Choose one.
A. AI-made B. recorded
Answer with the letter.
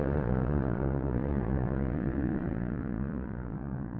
A